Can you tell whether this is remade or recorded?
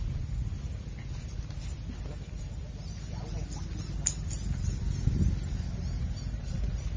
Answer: recorded